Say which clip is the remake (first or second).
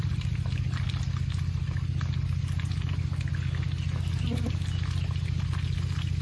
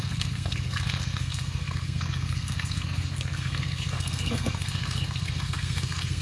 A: second